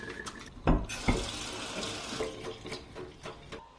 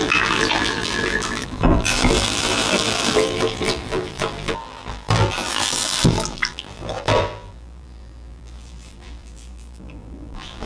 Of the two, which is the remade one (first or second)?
second